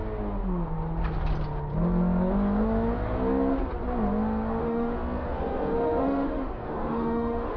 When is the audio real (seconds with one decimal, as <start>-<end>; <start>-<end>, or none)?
0.0-4.6